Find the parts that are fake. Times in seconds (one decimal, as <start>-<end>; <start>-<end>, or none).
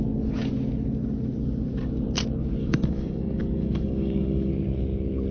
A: 2.6-4.5